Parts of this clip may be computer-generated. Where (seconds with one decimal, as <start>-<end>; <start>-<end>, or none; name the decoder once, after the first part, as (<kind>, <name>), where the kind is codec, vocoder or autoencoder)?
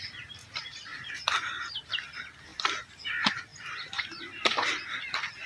0.4-1.1 (vocoder, BigVGAN v2); 2.5-3.0; 3.5-5.0